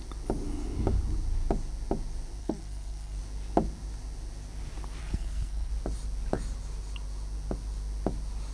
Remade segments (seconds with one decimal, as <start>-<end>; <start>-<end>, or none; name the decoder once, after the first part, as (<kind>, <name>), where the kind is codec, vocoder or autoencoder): 2.4-3.2 (codec, SNAC); 5.0-5.7